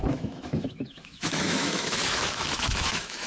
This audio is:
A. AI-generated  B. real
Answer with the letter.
A